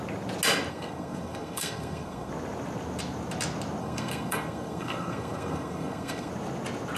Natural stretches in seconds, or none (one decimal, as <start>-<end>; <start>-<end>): 0.0-0.7; 2.3-3.8; 6.3-7.0